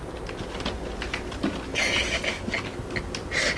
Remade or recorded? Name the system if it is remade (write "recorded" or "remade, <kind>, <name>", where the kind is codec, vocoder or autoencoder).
recorded